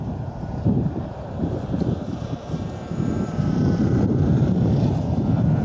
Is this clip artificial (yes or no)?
yes